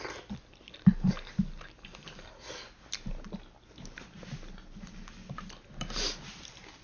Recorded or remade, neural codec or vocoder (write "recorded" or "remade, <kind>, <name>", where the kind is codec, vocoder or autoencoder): recorded